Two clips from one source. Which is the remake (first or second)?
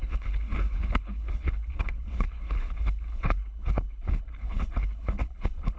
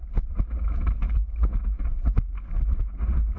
first